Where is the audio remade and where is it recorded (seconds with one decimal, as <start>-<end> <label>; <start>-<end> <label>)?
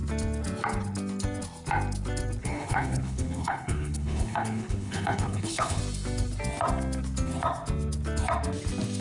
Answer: 0.0-2.4 recorded; 2.4-5.8 remade; 5.8-9.0 recorded